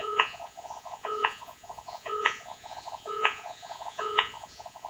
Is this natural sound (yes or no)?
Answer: no